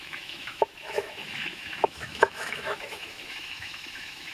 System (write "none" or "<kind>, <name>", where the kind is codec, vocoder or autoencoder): autoencoder, DAC-VAE